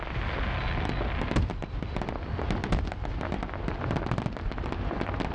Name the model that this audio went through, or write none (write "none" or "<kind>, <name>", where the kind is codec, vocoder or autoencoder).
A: none